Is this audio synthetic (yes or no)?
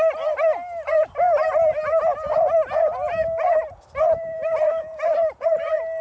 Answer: no